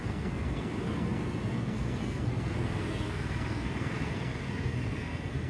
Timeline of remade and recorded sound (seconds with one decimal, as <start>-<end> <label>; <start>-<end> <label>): 0.0-5.5 remade